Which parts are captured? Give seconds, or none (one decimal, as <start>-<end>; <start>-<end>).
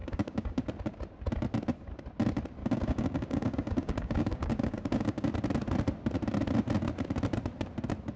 0.6-2.6; 5.3-8.2